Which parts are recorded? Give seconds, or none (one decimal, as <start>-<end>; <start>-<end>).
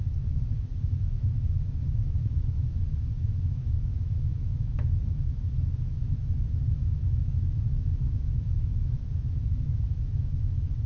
none